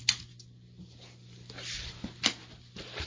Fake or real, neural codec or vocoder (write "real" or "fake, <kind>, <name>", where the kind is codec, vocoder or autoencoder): real